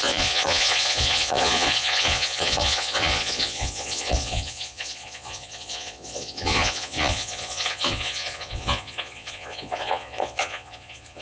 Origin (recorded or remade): remade